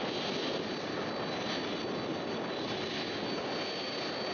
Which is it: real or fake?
real